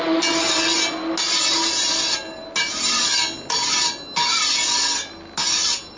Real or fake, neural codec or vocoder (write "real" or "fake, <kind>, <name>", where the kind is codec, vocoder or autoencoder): real